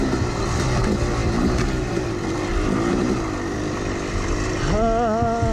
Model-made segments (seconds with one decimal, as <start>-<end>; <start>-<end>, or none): none